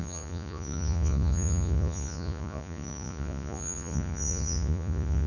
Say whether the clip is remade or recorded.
remade